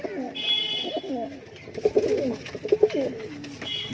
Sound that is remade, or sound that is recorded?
recorded